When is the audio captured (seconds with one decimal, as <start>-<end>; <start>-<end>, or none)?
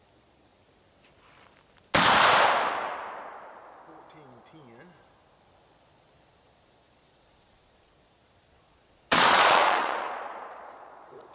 0.5-5.7